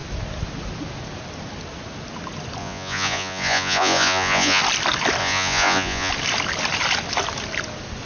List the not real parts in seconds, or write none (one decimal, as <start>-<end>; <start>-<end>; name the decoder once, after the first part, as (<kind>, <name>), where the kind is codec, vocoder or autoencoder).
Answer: 2.6-4.6 (vocoder, Vocos); 5.2-6.1